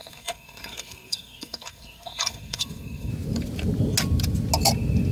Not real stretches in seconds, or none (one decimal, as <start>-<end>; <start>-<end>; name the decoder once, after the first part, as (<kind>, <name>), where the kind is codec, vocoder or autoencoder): 0.0-3.1 (codec, SNAC)